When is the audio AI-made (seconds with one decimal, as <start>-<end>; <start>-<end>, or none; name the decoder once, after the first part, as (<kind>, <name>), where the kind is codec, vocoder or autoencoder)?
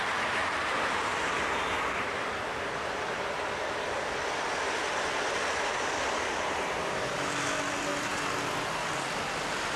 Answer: none